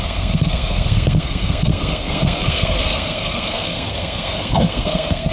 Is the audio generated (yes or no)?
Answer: yes